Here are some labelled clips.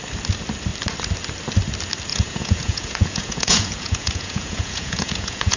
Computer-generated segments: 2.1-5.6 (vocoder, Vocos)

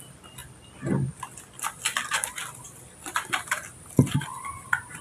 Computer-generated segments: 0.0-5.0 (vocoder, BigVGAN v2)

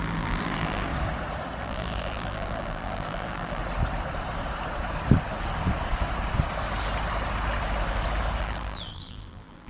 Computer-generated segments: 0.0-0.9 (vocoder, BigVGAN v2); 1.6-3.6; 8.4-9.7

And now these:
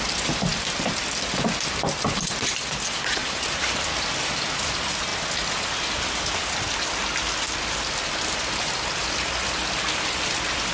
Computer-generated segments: 3.2-3.9 (vocoder, BigVGAN v2)

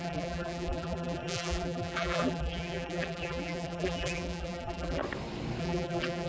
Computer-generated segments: 0.0-5.0 (vocoder, BigVGAN v2); 5.6-6.3